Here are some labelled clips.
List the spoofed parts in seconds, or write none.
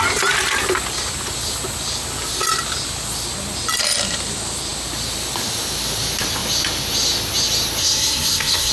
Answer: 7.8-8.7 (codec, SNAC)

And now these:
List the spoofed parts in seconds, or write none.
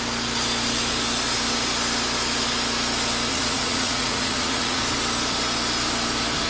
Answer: 3.3-4.8 (vocoder, Vocos)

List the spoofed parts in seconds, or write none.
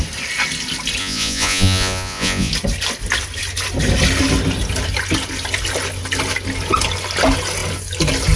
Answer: 1.0-2.5 (vocoder, Vocos)